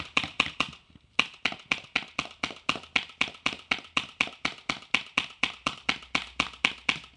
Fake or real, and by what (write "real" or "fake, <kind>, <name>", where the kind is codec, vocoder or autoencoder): real